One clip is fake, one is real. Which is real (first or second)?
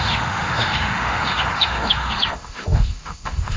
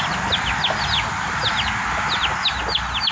second